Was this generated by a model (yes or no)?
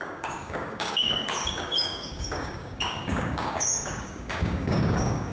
yes